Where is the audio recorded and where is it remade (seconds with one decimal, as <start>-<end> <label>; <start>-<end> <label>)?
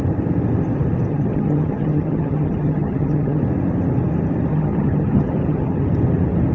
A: 0.0-1.1 recorded; 1.1-3.4 remade; 3.4-4.5 recorded; 4.5-5.8 remade; 5.8-6.5 recorded